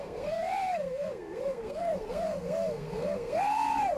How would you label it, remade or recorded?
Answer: remade